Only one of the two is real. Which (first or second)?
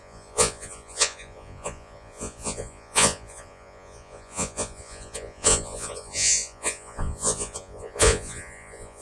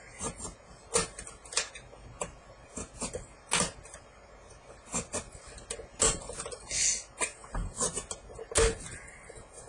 second